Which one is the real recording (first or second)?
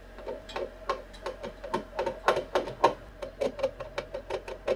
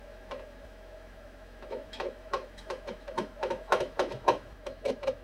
first